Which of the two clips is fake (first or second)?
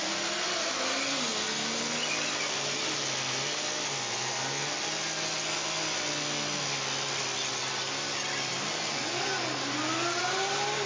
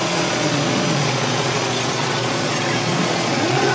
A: second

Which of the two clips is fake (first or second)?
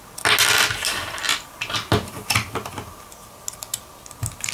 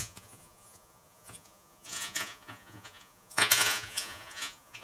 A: second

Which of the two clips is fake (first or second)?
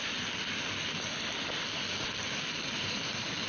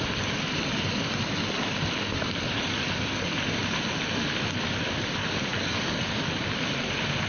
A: second